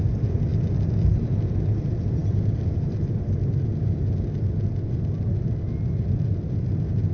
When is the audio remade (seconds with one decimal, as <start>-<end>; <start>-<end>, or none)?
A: none

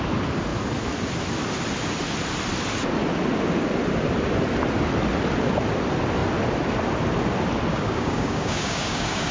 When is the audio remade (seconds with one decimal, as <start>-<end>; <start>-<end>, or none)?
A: 7.7-9.3

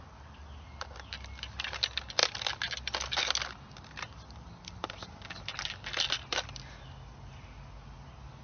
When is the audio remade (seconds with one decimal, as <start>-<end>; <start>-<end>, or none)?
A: none

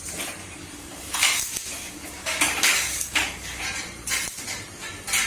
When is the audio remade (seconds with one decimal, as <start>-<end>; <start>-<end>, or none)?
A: 0.4-3.6

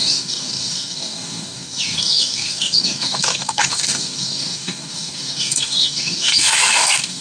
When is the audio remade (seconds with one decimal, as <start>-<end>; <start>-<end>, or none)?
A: 0.0-7.2

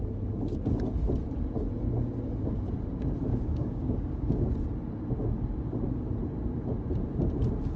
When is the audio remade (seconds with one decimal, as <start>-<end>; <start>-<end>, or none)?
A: 3.3-4.5

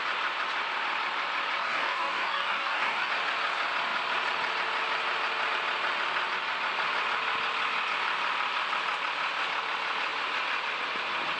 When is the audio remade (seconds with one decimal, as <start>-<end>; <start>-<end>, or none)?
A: 1.6-3.1